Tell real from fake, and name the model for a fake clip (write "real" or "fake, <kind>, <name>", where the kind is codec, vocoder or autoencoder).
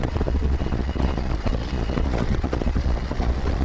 fake, vocoder, Vocos